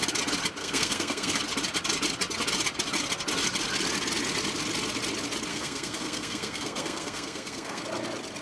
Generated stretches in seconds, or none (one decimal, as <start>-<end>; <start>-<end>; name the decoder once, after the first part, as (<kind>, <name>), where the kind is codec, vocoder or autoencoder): 0.6-1.4 (codec, SNAC); 5.5-7.8